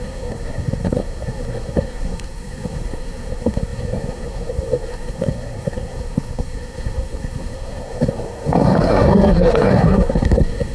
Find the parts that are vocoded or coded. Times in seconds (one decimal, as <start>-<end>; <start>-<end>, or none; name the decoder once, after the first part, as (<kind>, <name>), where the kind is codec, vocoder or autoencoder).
0.0-10.7 (codec, SNAC)